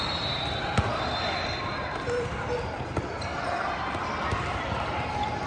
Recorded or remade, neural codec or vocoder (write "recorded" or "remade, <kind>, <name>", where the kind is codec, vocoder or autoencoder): remade, vocoder, BigVGAN v2